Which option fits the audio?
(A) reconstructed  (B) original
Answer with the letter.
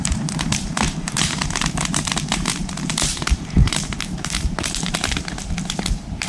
A